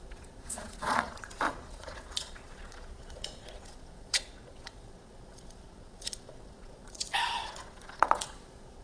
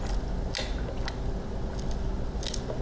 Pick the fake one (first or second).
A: first